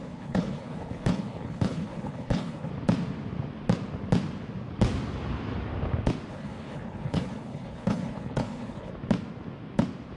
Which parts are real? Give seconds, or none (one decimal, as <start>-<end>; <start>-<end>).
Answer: 2.7-6.3; 8.9-10.2